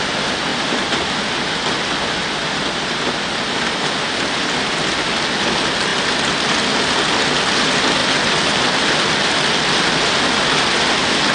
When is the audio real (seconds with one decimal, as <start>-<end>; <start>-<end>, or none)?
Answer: 0.0-11.3